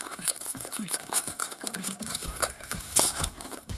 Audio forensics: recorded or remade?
remade